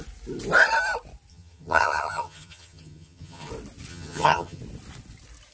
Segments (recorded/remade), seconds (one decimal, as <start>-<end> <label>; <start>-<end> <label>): 0.0-1.3 recorded; 1.3-3.5 remade; 3.5-3.9 recorded; 3.9-4.6 remade; 4.6-5.5 recorded